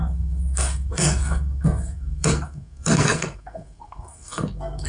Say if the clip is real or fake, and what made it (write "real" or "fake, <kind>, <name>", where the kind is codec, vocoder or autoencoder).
fake, codec, SNAC